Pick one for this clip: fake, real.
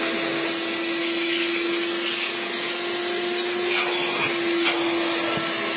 real